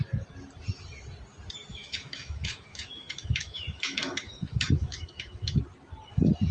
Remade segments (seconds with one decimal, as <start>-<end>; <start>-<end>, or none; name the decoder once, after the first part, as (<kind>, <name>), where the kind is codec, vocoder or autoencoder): 1.7-5.6 (autoencoder, DAC-VAE)

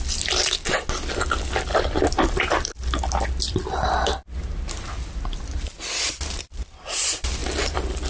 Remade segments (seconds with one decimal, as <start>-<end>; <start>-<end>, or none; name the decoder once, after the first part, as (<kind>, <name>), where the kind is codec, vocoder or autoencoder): none

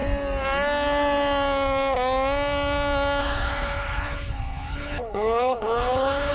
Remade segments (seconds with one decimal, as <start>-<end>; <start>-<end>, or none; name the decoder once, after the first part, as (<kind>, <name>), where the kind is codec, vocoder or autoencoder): 3.2-6.3 (codec, HILCodec)

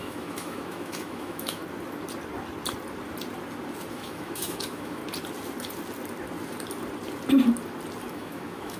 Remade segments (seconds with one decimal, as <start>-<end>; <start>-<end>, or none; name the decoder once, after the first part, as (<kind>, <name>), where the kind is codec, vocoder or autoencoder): 0.0-1.6 (autoencoder, DAC-VAE); 3.9-5.0; 8.1-8.8

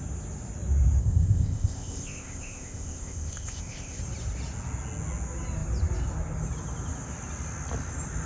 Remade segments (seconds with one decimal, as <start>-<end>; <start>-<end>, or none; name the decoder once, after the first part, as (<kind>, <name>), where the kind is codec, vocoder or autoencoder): 1.0-4.0 (codec, ZipCodec)

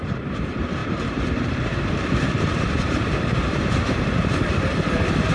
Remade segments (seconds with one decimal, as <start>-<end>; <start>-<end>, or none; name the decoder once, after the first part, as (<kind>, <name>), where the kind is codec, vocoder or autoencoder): 0.0-5.3 (vocoder, BigVGAN v2)

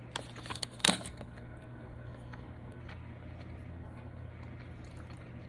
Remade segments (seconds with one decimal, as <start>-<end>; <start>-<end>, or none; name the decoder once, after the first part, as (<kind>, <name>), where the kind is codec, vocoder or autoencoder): 0.5-2.8 (codec, SNAC); 3.7-4.3